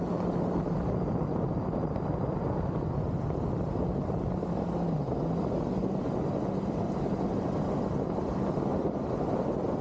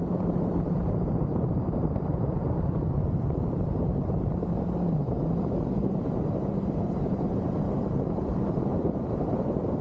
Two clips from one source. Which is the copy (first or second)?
second